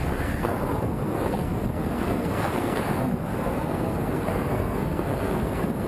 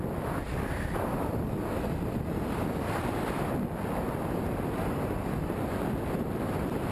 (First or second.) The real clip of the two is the second